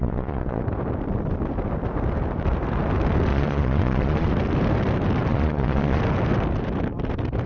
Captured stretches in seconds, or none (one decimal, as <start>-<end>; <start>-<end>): 0.6-3.3; 4.3-5.3; 6.0-7.5